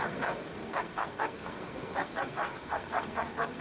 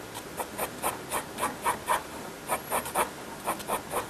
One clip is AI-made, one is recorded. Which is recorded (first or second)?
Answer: second